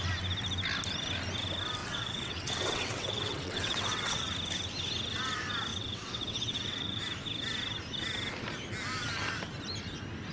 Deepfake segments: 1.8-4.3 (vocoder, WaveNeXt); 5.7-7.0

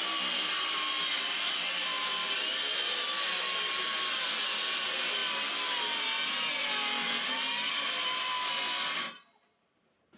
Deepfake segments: none

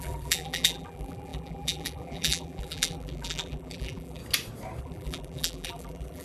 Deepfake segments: 0.0-4.2 (vocoder, BigVGAN v2); 4.8-6.2

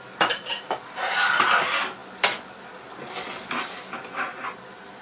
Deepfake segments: none